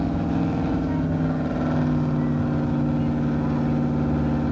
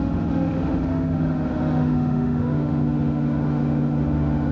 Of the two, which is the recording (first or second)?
first